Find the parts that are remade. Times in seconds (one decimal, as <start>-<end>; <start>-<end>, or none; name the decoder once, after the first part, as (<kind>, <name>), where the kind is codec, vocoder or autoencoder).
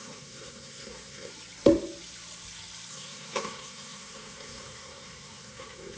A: 0.0-1.3 (codec, SNAC); 2.9-6.0